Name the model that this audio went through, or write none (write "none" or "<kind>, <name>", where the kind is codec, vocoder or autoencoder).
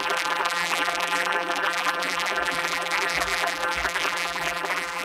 vocoder, BigVGAN v2